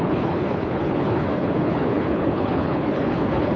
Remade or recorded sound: remade